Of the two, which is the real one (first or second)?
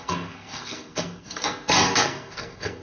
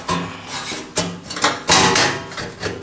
second